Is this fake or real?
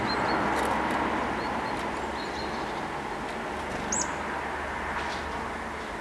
real